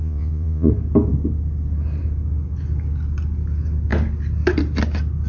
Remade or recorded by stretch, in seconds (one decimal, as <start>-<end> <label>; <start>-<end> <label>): 0.0-0.7 remade; 0.7-5.3 recorded